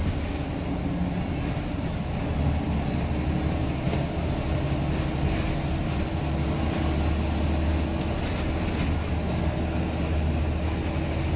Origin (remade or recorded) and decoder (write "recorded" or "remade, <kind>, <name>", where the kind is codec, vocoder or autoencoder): recorded